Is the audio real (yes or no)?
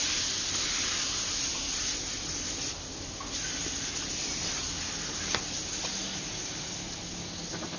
yes